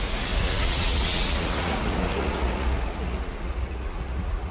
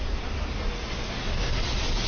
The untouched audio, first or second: second